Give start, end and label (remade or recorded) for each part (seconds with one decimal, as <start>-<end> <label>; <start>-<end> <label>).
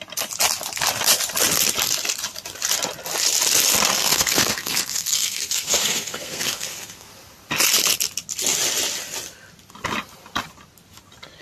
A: 0.0-3.9 recorded; 3.9-7.1 remade; 7.1-11.4 recorded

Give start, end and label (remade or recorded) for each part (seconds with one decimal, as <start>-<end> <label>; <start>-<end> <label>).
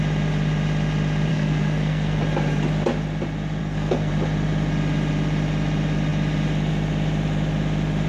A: 0.0-1.3 recorded; 1.3-2.2 remade; 2.2-3.6 recorded; 3.6-4.1 remade; 4.1-8.1 recorded